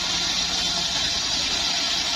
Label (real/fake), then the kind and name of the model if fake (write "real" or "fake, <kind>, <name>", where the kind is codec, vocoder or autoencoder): real